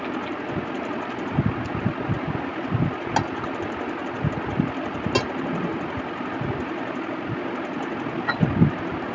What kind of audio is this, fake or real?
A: real